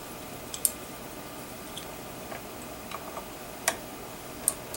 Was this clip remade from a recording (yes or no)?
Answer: no